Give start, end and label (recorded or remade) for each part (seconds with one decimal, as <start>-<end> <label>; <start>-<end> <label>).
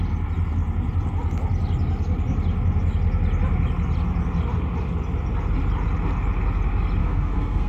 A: 0.0-7.0 recorded; 7.0-7.7 remade